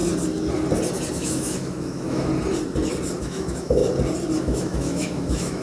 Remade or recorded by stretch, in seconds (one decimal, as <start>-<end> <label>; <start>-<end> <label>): 0.0-1.1 recorded; 1.1-2.3 remade; 2.3-3.2 recorded; 3.2-3.8 remade; 3.8-4.4 recorded; 4.4-5.6 remade